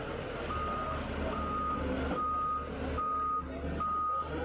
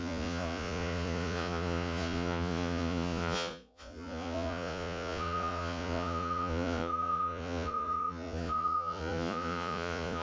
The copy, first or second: second